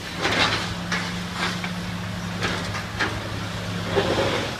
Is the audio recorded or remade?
recorded